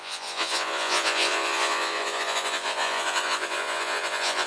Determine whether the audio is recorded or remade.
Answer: remade